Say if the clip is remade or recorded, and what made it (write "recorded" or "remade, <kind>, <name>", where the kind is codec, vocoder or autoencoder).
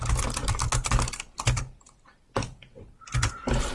recorded